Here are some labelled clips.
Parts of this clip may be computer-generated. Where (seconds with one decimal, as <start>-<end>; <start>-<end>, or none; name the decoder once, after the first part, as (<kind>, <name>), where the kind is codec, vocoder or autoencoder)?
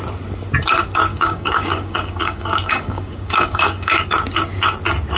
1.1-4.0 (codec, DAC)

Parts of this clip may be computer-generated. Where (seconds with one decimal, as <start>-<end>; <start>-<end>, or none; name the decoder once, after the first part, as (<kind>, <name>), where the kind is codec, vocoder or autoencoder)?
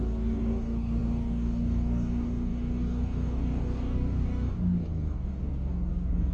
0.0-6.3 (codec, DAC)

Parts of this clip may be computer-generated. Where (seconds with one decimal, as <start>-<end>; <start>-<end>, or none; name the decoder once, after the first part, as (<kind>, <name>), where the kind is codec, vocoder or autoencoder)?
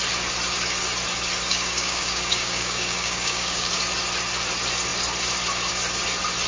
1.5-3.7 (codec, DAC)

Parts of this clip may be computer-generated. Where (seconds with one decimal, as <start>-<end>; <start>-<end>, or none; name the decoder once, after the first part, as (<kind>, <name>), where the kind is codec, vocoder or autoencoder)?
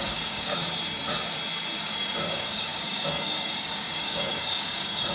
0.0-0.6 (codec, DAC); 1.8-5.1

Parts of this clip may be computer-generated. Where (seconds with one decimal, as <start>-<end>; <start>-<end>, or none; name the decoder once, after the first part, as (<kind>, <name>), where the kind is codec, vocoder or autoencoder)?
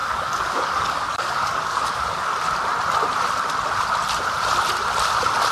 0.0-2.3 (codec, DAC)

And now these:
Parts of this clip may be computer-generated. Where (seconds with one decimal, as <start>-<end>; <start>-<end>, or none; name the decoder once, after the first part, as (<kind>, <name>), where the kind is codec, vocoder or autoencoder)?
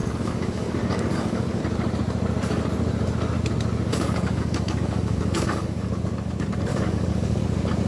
0.0-1.6 (codec, DAC); 3.9-5.9; 6.7-7.4